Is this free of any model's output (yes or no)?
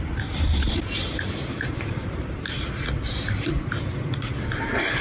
no